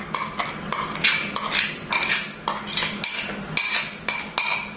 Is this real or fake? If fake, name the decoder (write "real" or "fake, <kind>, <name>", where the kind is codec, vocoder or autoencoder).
real